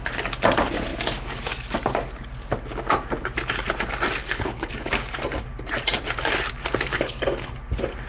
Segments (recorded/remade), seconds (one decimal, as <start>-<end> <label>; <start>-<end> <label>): 0.0-4.2 recorded; 4.2-4.7 remade; 4.7-6.9 recorded; 6.9-7.6 remade; 7.6-8.1 recorded